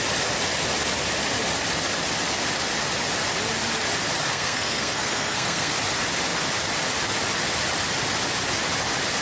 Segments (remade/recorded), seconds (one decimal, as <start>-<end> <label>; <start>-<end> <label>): 0.0-4.3 recorded; 4.3-5.7 remade; 5.7-9.2 recorded